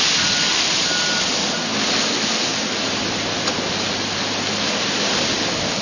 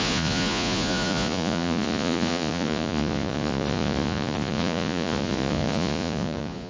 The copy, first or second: second